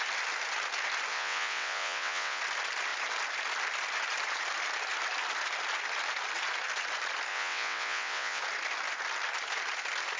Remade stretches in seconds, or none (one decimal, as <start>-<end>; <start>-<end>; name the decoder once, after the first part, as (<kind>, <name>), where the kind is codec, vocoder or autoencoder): 1.1-2.4 (vocoder, WaveNeXt); 7.3-8.4

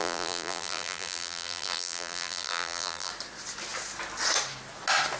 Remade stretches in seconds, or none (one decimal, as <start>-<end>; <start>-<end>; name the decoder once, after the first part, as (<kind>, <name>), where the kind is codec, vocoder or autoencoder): 0.0-3.1 (vocoder, BigVGAN v2)

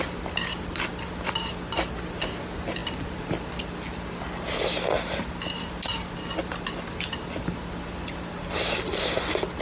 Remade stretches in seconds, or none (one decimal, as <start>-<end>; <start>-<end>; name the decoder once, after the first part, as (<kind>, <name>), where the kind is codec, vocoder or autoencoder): none

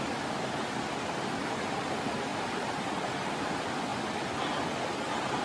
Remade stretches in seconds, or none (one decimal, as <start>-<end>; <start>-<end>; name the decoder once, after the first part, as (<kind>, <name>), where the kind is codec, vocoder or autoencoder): 2.3-3.3 (vocoder, BigVGAN v2)

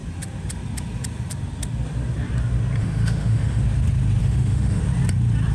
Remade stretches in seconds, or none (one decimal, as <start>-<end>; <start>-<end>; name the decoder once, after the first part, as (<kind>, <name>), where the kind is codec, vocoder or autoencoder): 2.8-3.6 (autoencoder, DAC-VAE); 4.2-4.8

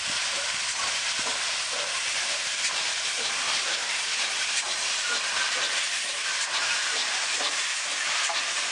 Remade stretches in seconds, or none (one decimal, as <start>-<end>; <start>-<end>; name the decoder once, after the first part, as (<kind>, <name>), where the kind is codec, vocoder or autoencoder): 0.0-3.8 (vocoder, BigVGAN v2); 6.1-8.7